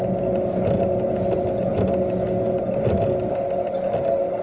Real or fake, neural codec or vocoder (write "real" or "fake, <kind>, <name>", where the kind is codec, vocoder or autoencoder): real